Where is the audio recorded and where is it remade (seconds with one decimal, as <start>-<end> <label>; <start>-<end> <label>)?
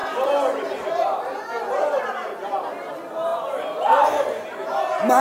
0.0-2.0 remade; 2.0-3.3 recorded; 3.3-4.7 remade; 4.7-5.2 recorded